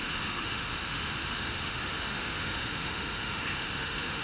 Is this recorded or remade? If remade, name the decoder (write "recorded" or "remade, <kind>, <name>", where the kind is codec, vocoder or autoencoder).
remade, autoencoder, DAC-VAE